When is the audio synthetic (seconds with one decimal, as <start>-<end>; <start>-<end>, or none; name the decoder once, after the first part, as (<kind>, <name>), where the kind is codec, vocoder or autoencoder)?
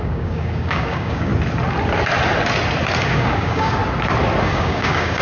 0.0-1.3 (codec, DAC); 3.0-3.8; 4.4-5.2